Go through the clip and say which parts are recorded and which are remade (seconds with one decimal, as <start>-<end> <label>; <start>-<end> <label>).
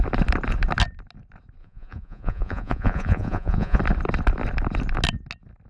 0.0-1.6 recorded; 1.6-3.8 remade; 3.8-5.7 recorded